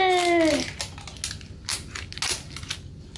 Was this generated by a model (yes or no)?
no